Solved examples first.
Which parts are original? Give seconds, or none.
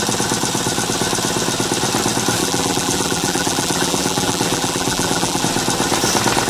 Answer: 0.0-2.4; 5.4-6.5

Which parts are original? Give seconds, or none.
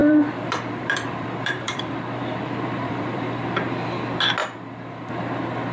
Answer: 3.4-4.4; 5.1-5.7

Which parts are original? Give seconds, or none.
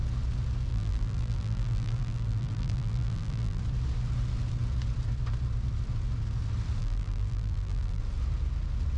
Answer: 0.0-0.7; 3.6-6.8; 8.0-9.0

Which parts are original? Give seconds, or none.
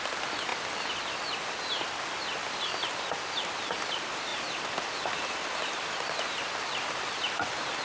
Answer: 0.0-7.8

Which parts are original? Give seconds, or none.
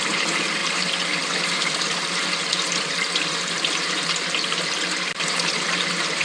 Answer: none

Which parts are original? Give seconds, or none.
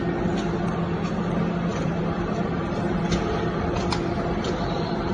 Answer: 0.0-1.7